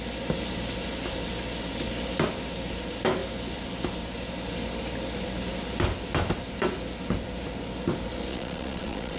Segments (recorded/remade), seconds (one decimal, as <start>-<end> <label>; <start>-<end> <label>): 0.0-8.3 recorded; 8.3-9.2 remade